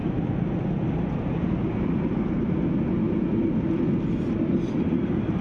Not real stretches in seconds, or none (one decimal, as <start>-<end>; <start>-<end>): none